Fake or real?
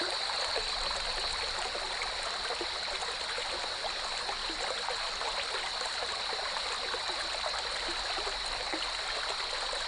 real